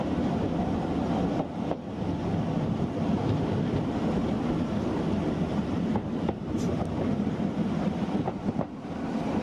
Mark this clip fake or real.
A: real